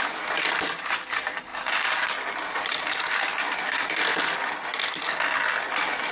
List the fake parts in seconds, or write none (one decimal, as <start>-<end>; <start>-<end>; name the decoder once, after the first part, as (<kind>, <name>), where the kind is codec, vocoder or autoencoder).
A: 1.5-3.0 (vocoder, BigVGAN v2)

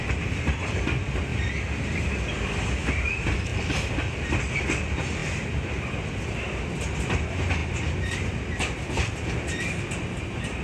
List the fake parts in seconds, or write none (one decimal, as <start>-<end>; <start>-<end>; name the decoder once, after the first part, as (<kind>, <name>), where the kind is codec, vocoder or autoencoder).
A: 3.5-4.6 (vocoder, BigVGAN v2); 7.6-10.2

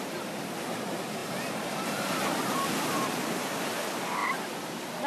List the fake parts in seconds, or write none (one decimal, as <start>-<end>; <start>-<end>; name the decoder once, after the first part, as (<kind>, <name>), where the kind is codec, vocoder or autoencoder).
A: none

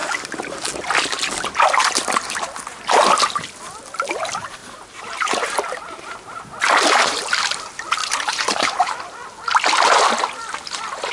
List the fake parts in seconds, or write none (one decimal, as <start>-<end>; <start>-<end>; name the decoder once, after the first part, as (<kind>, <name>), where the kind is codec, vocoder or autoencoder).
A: 4.6-6.1 (vocoder, BigVGAN v2); 8.0-9.1

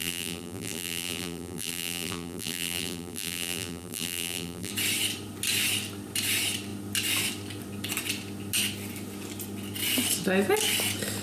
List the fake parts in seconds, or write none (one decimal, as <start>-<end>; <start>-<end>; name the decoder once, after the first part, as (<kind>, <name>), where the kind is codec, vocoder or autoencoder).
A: 0.0-4.7 (vocoder, BigVGAN v2)

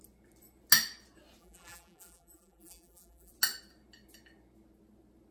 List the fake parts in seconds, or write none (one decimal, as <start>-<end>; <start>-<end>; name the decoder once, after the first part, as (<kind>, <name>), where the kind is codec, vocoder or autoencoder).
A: 1.4-3.3 (vocoder, BigVGAN v2)

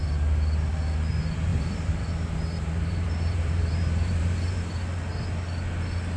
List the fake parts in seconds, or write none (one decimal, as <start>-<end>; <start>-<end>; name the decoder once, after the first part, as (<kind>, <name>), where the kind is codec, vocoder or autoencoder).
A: 1.5-4.6 (vocoder, BigVGAN v2)

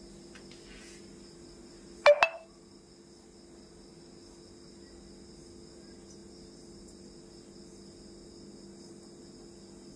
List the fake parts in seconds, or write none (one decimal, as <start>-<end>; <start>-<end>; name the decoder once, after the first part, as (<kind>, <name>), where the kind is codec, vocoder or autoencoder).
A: none